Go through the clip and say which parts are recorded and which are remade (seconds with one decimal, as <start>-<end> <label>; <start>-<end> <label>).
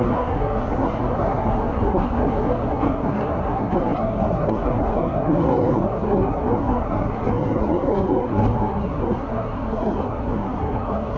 0.0-11.2 remade